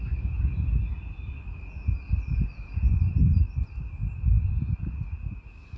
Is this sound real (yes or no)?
yes